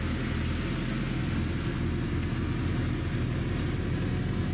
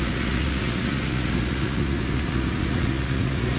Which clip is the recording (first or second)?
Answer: first